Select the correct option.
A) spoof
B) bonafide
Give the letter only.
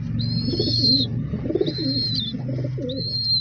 B